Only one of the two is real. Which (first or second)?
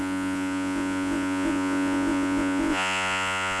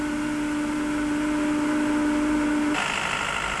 second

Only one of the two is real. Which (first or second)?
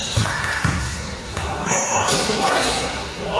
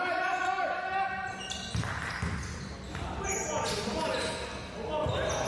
second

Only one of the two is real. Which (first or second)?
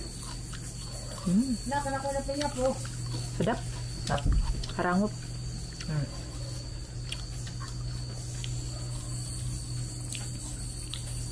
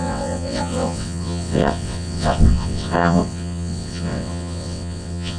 first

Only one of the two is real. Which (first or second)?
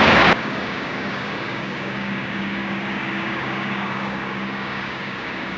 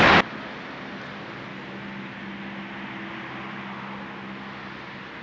second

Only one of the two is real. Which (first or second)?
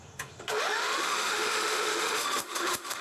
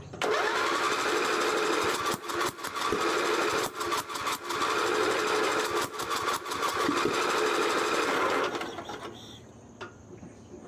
second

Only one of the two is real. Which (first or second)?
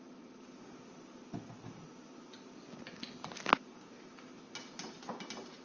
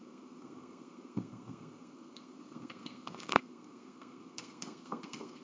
first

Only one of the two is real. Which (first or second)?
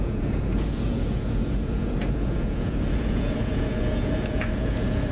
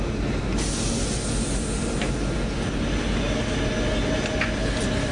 second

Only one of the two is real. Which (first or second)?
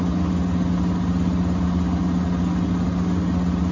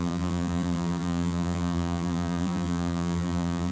first